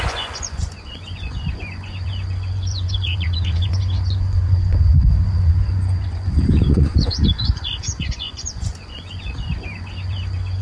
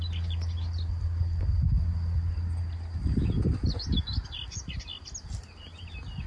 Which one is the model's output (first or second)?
first